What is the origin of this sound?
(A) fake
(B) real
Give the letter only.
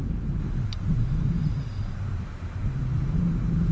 B